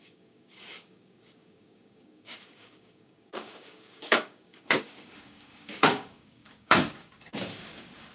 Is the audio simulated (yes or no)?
yes